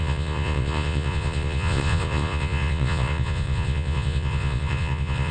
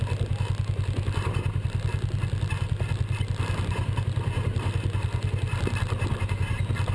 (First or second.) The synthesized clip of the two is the first